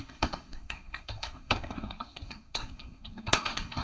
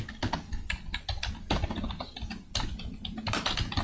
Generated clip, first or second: first